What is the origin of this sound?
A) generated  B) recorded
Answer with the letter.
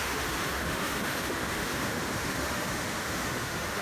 A